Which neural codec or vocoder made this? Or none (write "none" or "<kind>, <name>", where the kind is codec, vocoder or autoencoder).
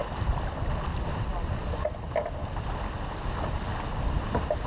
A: none